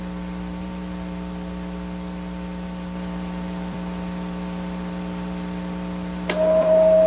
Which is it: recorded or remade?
remade